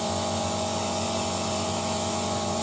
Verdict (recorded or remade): remade